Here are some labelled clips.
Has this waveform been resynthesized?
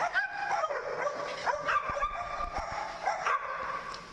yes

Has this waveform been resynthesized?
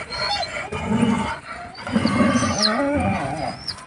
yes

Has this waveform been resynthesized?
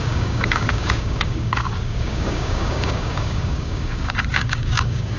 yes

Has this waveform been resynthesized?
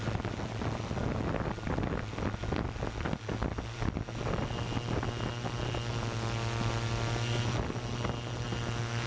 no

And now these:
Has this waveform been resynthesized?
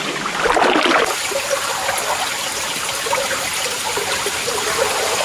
no